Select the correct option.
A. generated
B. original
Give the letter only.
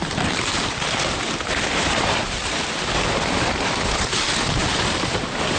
A